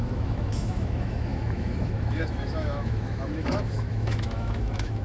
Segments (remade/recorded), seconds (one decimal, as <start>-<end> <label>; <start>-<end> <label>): 0.0-5.0 remade